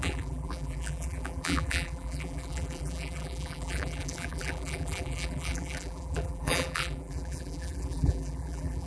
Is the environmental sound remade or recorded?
remade